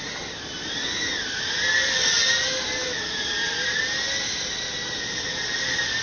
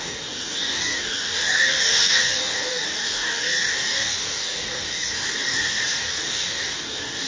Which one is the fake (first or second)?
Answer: second